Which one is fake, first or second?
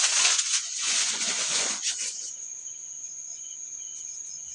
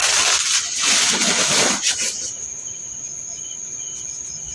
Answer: first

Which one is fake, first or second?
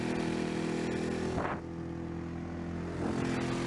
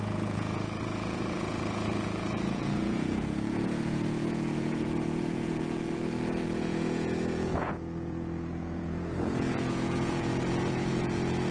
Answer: second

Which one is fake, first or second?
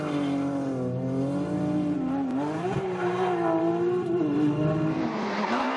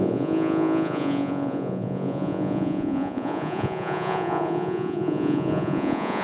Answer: second